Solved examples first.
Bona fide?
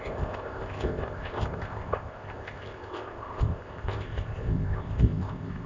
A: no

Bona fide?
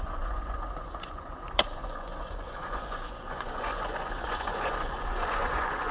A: no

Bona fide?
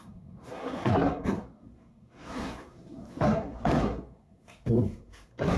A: no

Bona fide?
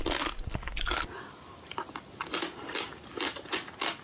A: yes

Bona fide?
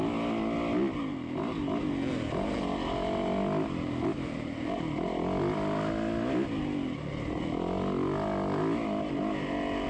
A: yes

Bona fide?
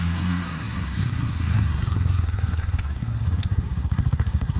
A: no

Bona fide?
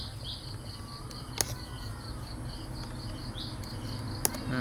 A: yes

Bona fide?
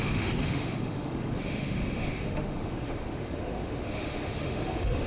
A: no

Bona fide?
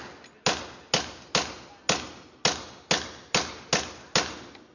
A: yes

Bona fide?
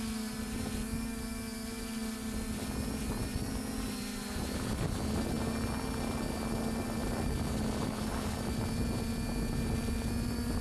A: yes